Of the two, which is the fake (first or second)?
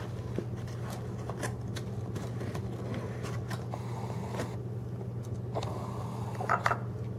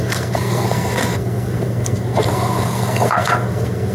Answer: second